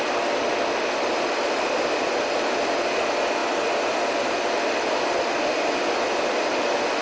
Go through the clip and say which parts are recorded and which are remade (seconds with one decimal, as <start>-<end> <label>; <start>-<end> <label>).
0.0-7.0 recorded